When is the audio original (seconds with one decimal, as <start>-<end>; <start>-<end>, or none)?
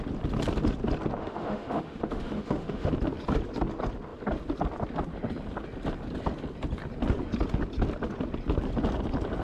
0.0-1.2; 2.9-9.4